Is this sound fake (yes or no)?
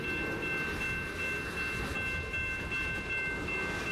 no